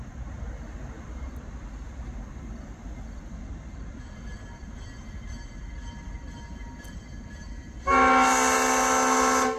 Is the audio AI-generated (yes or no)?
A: no